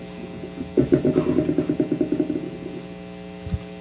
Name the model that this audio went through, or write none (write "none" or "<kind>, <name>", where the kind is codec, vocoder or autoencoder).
none